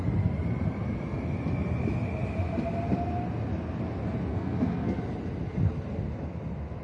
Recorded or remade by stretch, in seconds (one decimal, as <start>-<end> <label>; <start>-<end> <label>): 0.0-4.3 recorded; 4.3-5.0 remade; 5.0-6.8 recorded